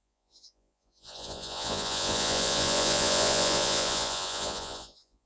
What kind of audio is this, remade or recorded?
remade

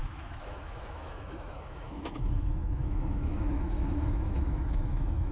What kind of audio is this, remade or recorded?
remade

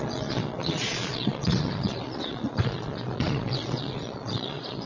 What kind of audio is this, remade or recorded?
remade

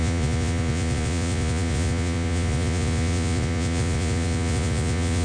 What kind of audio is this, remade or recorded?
remade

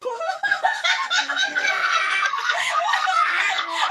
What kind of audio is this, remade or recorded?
remade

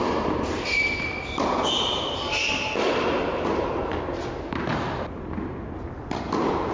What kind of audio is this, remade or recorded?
recorded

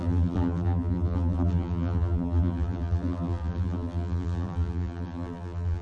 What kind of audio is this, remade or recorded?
remade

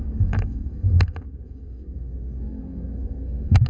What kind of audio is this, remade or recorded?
remade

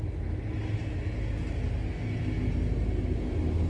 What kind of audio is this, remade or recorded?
recorded